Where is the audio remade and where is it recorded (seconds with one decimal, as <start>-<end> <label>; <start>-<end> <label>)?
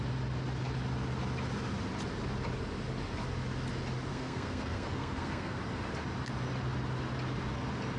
0.0-4.1 recorded; 4.1-5.6 remade; 5.6-8.0 recorded